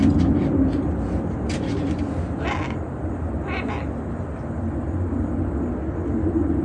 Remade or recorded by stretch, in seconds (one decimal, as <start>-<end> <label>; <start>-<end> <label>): 0.0-6.6 recorded